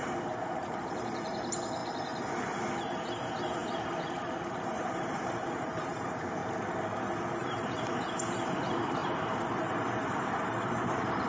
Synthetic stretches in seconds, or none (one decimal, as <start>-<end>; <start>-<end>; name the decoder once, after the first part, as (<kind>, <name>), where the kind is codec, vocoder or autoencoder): 0.0-1.8 (vocoder, BigVGAN v2); 2.8-6.4; 7.4-11.3